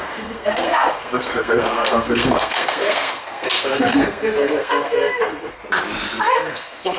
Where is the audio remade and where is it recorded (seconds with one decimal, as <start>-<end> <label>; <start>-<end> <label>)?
0.0-5.6 remade; 5.6-6.2 recorded; 6.2-7.0 remade